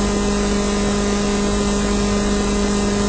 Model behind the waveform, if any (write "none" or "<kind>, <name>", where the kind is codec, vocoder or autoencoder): none